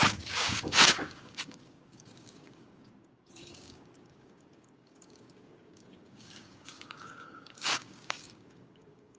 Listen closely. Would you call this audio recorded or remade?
remade